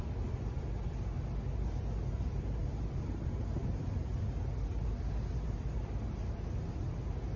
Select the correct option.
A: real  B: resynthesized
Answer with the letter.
A